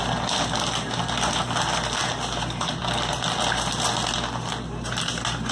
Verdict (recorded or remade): recorded